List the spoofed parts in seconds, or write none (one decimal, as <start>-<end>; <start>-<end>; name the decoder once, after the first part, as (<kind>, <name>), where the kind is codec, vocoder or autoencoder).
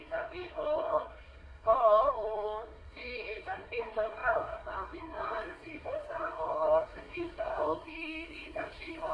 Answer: 0.0-9.1 (codec, SNAC)